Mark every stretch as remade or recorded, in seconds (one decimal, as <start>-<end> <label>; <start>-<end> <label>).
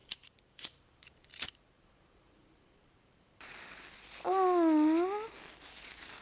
0.0-3.5 remade; 3.5-6.2 recorded